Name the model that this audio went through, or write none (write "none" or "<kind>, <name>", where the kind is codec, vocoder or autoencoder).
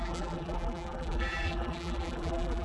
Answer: vocoder, BigVGAN v2